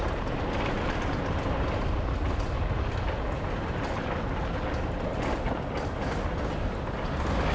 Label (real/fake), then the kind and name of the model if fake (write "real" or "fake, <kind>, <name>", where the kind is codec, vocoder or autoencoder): real